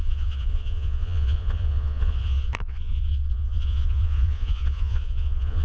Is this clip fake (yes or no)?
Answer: yes